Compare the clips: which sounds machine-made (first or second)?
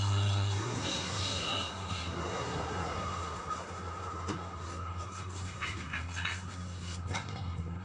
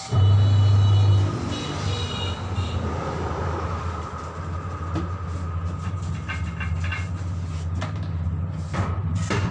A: first